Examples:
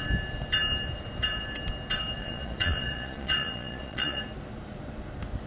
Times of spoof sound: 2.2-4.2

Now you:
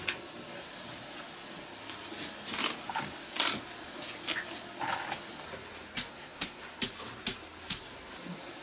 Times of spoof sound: 6.1-6.6

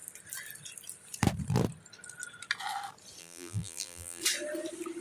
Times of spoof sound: 3.2-4.2

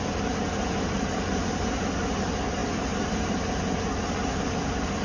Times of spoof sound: none

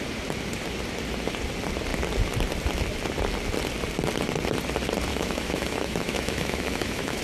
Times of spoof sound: 5.1-7.2

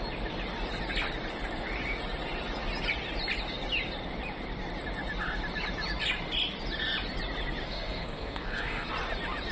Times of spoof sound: 7.6-8.9